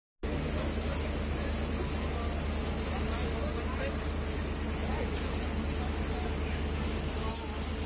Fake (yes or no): no